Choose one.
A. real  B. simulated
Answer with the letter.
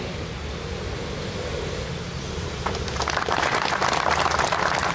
A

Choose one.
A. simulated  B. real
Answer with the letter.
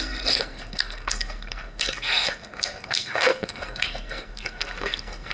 A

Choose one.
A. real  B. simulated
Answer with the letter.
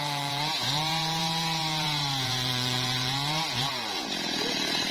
B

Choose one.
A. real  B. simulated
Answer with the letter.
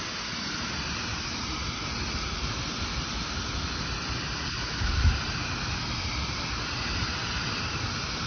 A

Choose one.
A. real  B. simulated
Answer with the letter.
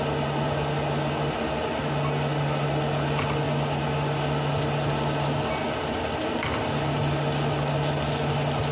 A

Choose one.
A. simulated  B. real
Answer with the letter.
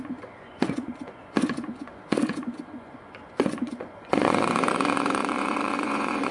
A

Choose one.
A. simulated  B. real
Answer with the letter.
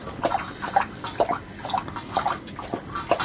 B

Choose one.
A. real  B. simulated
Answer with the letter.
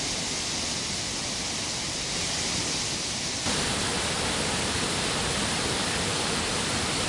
A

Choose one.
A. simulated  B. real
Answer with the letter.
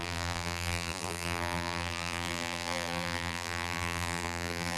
A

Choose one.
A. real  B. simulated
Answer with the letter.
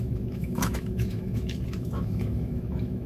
B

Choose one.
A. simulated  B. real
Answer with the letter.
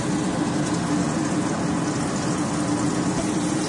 B